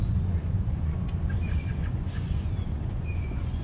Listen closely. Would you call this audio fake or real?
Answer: fake